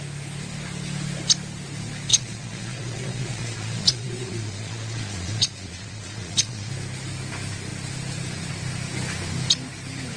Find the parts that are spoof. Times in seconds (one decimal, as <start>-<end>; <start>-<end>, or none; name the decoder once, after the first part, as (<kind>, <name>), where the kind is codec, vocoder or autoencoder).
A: 2.1-6.7 (vocoder, Vocos)